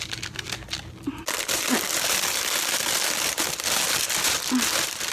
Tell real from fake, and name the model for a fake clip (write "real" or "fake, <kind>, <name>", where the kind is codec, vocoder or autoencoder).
real